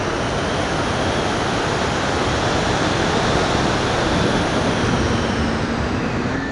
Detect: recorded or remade recorded